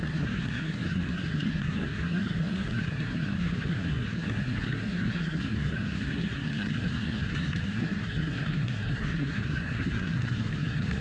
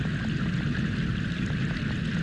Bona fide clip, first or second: second